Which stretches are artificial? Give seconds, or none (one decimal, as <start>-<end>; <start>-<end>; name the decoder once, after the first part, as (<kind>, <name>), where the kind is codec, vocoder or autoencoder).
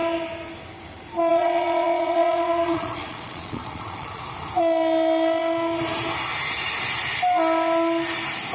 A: 1.3-4.2 (vocoder, Vocos)